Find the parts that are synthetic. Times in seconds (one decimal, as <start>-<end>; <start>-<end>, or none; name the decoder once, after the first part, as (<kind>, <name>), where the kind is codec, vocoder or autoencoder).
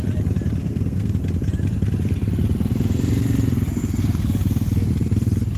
0.6-1.2 (codec, SNAC)